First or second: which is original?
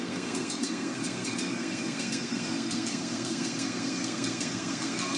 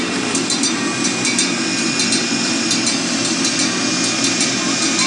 second